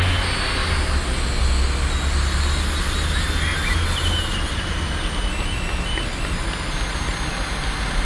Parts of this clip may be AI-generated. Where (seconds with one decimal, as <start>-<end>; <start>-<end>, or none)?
none